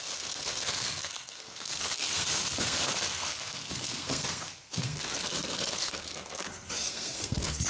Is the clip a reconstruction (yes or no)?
yes